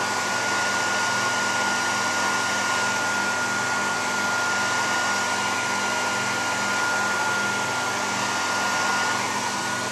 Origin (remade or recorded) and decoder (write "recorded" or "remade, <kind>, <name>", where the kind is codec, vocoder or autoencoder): recorded